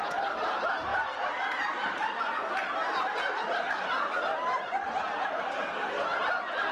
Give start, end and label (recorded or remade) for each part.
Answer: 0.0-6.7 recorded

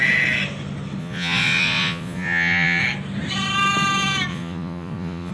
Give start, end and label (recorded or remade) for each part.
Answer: 0.0-1.0 recorded; 1.0-2.8 remade; 2.8-4.3 recorded; 4.3-5.3 remade

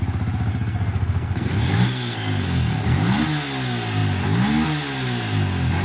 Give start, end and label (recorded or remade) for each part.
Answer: 0.0-0.5 recorded; 0.5-3.2 remade; 3.2-5.8 recorded

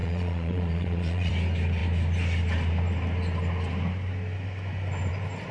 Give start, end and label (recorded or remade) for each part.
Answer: 0.0-1.3 remade; 1.3-5.5 recorded

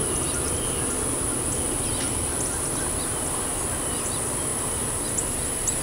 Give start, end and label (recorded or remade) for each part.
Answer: 0.0-5.8 recorded

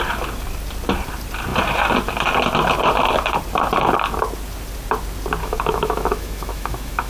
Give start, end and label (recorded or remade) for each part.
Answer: 0.0-5.4 recorded; 5.4-7.1 remade

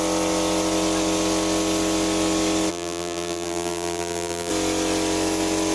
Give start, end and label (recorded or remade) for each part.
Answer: 0.0-2.7 recorded; 2.7-4.5 remade; 4.5-5.7 recorded

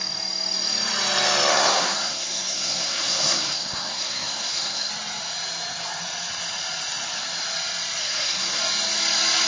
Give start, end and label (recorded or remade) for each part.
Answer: 0.0-1.5 recorded; 1.5-4.9 remade; 4.9-8.0 recorded; 8.0-8.6 remade; 8.6-9.5 recorded